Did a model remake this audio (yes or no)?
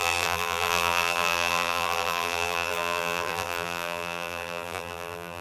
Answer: yes